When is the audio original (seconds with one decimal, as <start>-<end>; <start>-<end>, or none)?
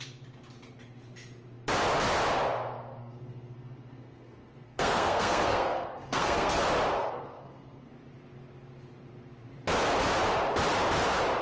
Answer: 0.0-3.0; 6.6-7.0; 7.9-11.4